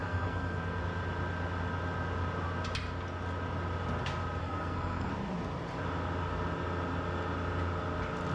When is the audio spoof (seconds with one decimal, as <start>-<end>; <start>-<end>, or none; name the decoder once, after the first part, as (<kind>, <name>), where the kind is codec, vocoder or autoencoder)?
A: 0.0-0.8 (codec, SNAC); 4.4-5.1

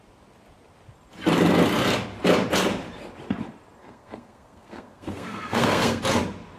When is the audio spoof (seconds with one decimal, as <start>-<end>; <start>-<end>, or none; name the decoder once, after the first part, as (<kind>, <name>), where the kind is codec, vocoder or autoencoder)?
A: 3.8-6.0 (codec, SNAC)

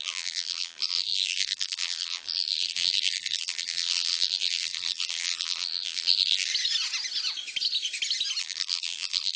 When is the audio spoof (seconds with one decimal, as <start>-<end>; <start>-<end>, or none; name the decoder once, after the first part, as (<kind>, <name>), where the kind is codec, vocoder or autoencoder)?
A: 0.0-6.5 (vocoder, BigVGAN v2); 8.4-9.4

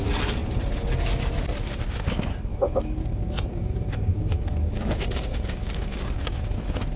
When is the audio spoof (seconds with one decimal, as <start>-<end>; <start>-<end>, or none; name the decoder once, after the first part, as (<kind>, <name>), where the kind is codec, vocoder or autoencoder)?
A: 2.5-6.6 (codec, DAC)